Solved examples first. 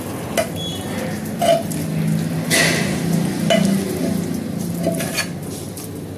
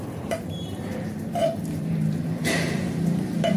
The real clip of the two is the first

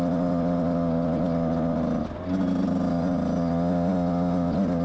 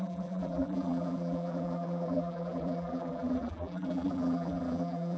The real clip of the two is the first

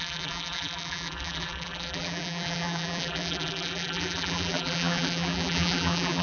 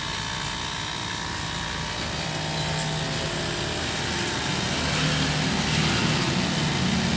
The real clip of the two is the second